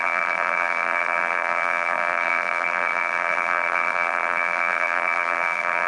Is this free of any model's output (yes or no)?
no